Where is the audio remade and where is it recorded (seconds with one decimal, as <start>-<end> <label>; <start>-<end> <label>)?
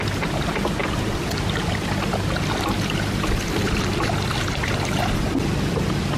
0.0-6.2 recorded